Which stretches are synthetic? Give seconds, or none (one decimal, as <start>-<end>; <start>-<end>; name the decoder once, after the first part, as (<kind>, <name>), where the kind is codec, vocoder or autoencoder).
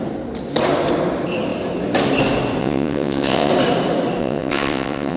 2.6-3.5 (vocoder, WaveNeXt); 4.2-5.2